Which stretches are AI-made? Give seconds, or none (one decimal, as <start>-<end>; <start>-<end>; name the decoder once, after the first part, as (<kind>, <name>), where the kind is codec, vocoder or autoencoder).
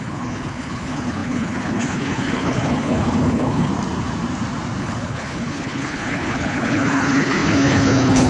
0.0-3.7 (codec, HILCodec); 4.8-8.3